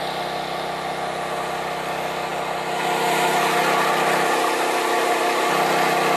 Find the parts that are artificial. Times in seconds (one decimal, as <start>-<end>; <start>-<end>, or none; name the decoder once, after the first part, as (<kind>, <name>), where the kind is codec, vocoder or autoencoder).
none